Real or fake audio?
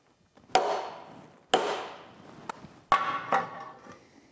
real